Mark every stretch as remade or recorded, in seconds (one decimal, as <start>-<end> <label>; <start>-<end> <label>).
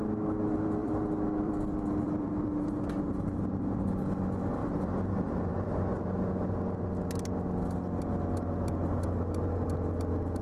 0.0-0.8 recorded; 0.8-2.8 remade; 2.8-4.6 recorded; 4.6-5.5 remade; 5.5-10.4 recorded